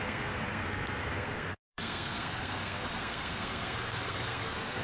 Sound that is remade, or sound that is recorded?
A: remade